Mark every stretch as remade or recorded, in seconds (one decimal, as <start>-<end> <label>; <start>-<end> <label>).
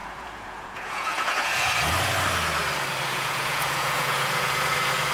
0.0-1.7 remade; 1.7-3.1 recorded; 3.1-5.1 remade